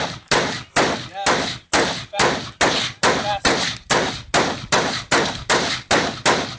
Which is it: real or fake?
real